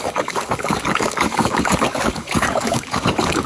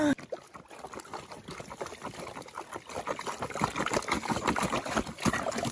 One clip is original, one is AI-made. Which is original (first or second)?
second